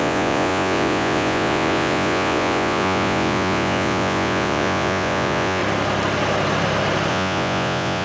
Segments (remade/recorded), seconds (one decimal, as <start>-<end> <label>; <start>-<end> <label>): 0.0-5.6 remade; 5.6-7.1 recorded; 7.1-8.0 remade